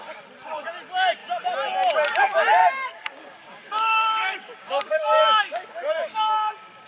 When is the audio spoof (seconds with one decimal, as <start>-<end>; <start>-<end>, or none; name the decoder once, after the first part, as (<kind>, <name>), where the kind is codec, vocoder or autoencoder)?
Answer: 2.6-6.9 (codec, DAC)